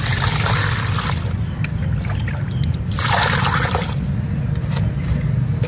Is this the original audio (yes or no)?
yes